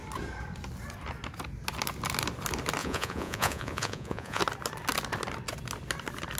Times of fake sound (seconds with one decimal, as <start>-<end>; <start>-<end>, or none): 2.8-4.4